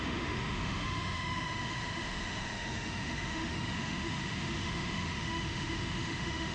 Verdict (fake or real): fake